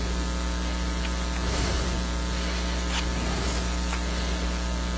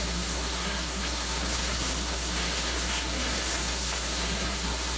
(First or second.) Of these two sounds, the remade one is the second